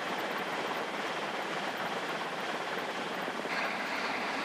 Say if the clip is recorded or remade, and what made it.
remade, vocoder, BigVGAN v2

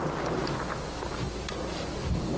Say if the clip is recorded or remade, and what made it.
recorded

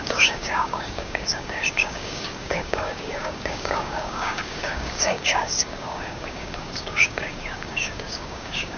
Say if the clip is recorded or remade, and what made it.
remade, codec, DAC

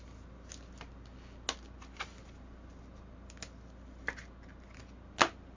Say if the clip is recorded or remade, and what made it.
recorded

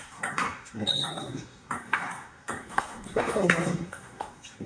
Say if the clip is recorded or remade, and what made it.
remade, codec, SNAC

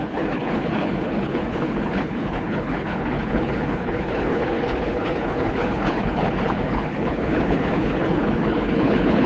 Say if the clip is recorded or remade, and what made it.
remade, codec, HILCodec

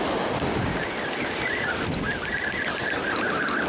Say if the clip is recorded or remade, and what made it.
recorded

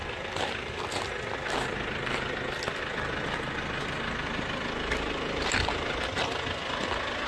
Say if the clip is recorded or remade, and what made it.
recorded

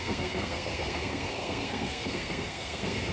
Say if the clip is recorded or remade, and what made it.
remade, codec, SNAC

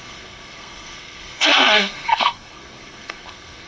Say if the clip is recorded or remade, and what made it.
remade, codec, SNAC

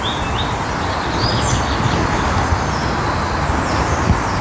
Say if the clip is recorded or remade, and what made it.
recorded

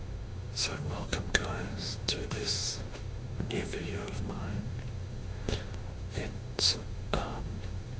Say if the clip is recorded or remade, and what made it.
remade, autoencoder, DAC-VAE